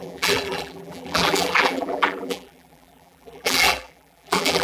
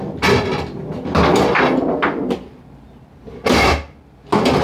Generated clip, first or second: first